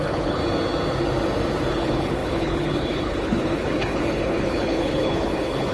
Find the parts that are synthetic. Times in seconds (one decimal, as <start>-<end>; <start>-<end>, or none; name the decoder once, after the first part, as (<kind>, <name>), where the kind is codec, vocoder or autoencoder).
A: 0.0-0.4 (codec, HILCodec); 1.7-5.7